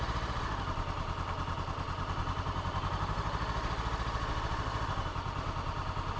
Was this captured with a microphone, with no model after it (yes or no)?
yes